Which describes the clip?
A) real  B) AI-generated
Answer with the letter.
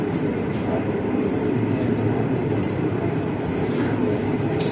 B